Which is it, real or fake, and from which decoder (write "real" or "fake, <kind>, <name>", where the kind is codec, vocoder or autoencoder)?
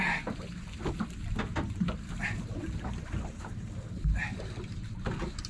real